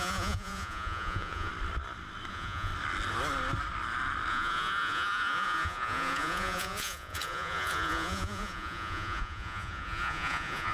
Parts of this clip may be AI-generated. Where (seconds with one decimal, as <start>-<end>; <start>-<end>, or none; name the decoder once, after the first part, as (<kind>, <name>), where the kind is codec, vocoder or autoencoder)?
0.0-1.5 (vocoder, Vocos); 2.3-2.7; 4.3-10.7